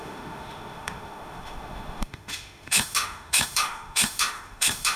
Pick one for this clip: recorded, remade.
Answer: remade